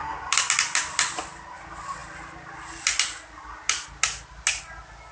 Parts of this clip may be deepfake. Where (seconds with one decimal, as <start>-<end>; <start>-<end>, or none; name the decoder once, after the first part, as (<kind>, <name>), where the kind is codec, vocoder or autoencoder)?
none